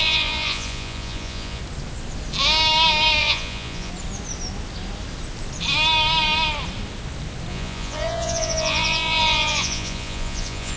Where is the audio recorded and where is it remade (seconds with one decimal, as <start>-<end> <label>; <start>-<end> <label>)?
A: 0.0-1.6 remade; 1.6-3.2 recorded; 3.2-3.9 remade; 3.9-7.5 recorded; 7.5-10.8 remade